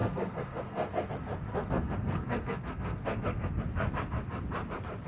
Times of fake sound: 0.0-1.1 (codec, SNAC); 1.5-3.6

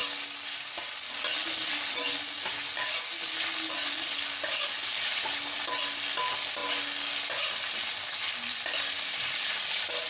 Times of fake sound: 3.7-6.6 (vocoder, BigVGAN v2); 8.3-10.1

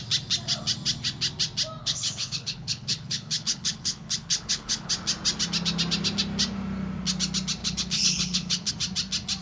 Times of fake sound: 1.8-4.9 (codec, HILCodec); 7.6-8.7

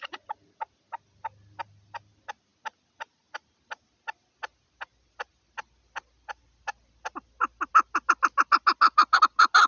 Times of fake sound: none